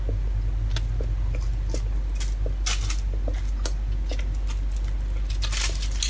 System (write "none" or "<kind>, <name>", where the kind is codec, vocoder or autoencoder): none